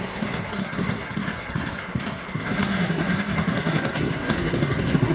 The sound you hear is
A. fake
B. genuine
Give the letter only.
A